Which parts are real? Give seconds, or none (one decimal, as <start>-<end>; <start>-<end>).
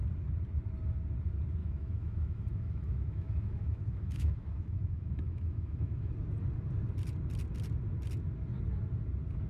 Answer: 0.0-1.6; 6.1-9.5